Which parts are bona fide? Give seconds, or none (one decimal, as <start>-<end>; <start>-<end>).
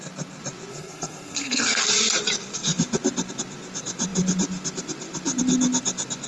0.0-0.7; 1.8-6.3